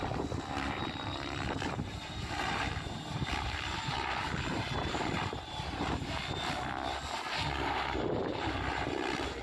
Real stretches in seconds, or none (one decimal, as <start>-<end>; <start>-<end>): 6.2-7.3